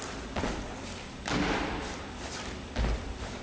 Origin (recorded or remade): recorded